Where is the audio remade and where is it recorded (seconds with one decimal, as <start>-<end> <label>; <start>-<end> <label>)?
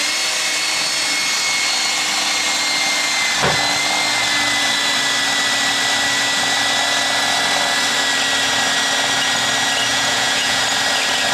0.0-9.9 recorded; 9.9-10.6 remade; 10.6-11.3 recorded